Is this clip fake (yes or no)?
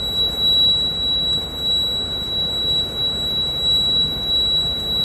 no